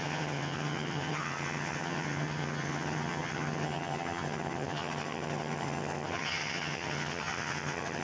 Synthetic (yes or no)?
yes